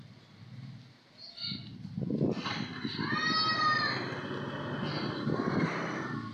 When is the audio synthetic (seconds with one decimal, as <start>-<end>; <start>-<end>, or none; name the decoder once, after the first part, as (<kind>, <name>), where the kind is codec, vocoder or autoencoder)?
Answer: none